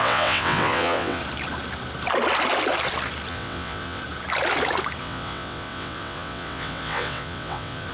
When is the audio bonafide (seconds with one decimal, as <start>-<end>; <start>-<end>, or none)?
1.2-3.3; 4.0-5.0